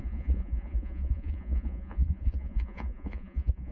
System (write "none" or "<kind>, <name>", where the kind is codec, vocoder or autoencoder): vocoder, Vocos